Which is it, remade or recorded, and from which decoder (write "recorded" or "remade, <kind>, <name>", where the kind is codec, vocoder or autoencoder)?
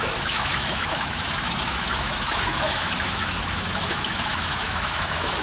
remade, autoencoder, DAC-VAE